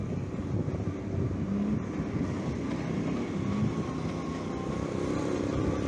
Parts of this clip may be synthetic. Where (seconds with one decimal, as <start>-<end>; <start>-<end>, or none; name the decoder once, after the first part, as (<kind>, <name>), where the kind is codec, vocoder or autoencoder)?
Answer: none